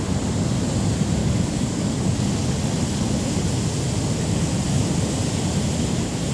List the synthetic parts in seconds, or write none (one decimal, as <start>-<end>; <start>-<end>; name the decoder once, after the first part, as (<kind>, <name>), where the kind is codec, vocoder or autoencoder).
1.2-2.3 (codec, DAC)